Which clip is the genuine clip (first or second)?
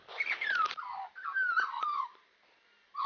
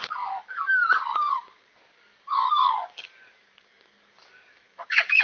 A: first